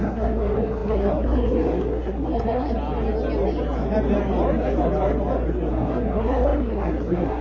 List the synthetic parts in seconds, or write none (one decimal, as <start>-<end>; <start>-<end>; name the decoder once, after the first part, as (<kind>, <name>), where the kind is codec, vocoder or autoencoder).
0.0-2.7 (codec, SNAC); 5.7-7.4